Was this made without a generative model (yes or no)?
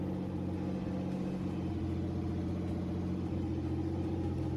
yes